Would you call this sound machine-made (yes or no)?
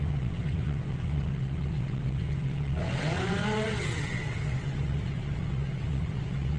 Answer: yes